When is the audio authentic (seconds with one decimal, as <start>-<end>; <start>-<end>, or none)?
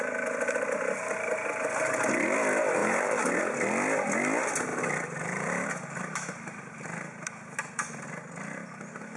0.0-2.8; 3.4-4.7; 7.4-9.2